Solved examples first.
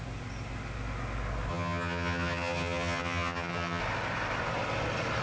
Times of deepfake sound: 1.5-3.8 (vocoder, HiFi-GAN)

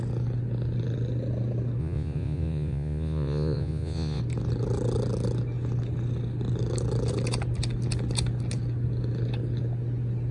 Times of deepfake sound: 1.8-4.2 (vocoder, Vocos)

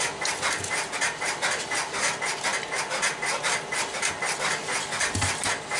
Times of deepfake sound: none

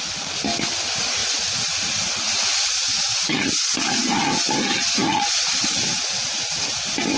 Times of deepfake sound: none

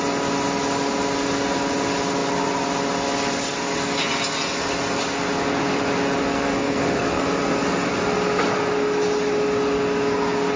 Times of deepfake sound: 6.3-7.2 (codec, SNAC)

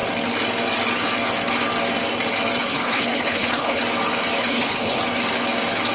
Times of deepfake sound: 2.6-3.8 (codec, HILCodec); 4.4-5.0

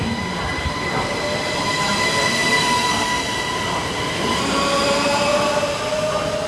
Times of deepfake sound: 0.5-1.2 (vocoder, BigVGAN v2)